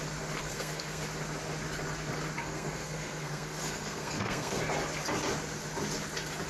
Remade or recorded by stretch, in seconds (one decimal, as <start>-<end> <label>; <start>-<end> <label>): 0.0-0.4 recorded; 0.4-1.0 remade; 1.0-2.4 recorded; 2.4-4.6 remade; 4.6-6.5 recorded